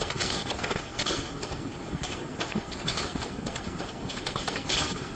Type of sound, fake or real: fake